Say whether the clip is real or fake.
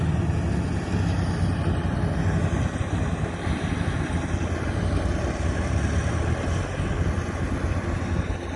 real